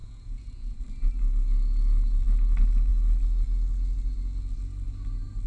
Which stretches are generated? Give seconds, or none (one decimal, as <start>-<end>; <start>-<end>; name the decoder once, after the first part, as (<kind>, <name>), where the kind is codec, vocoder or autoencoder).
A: 0.0-0.8 (vocoder, Vocos)